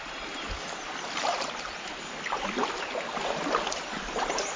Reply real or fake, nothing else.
real